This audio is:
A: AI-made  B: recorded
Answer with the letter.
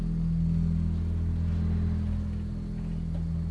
B